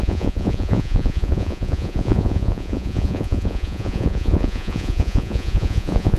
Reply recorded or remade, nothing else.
remade